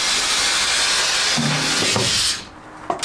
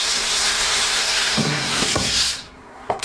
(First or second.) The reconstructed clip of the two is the second